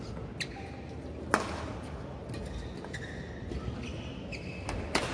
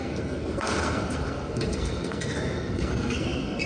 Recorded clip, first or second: first